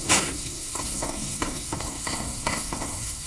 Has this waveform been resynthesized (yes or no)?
yes